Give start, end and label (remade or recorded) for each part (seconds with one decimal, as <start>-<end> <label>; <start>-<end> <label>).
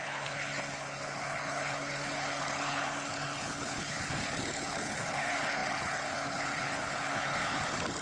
0.0-8.0 remade